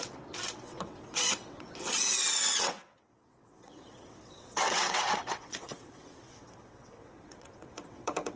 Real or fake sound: fake